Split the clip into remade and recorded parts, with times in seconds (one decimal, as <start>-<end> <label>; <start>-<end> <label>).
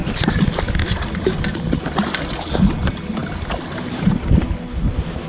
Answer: 0.0-5.3 recorded